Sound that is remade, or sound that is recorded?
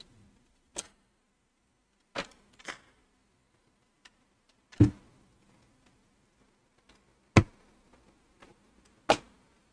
recorded